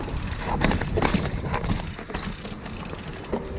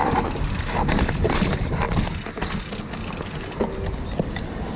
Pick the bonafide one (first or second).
second